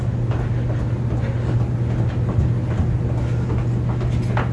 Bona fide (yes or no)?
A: yes